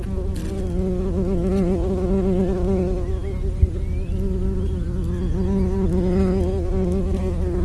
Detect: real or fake real